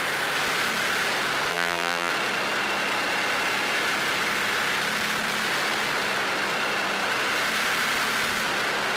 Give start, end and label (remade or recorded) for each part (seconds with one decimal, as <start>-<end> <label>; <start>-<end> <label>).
0.0-1.5 recorded; 1.5-2.1 remade; 2.1-9.0 recorded